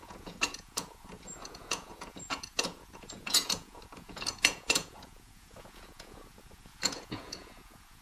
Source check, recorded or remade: remade